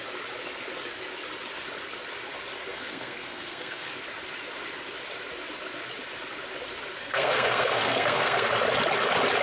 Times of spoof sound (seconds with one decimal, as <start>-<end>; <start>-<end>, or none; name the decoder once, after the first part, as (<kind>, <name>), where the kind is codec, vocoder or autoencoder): 2.7-3.9 (codec, SNAC); 7.0-8.5